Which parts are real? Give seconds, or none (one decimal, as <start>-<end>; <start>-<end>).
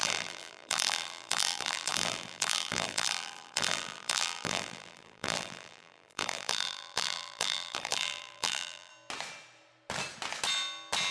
8.9-11.1